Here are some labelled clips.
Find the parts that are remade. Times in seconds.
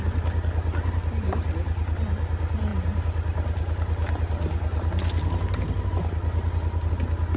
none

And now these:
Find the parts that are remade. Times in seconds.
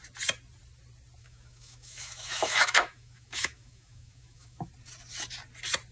1.2-4.7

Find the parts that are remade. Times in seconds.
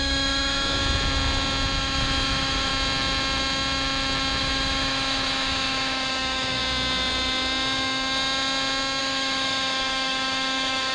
0.0-0.8; 1.8-2.7; 4.4-6.6; 9.0-10.9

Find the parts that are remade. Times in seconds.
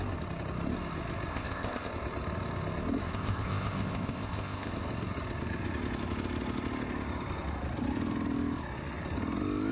1.3-1.9; 3.1-4.7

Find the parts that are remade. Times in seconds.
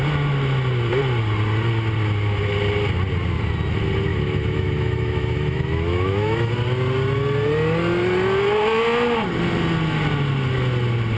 4.1-6.5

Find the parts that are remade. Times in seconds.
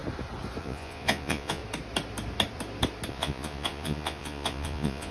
0.6-1.6; 3.1-5.1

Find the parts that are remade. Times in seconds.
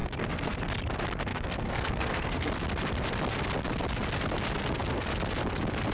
0.0-0.6; 1.3-2.5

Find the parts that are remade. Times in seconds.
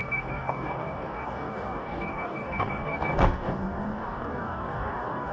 0.0-5.3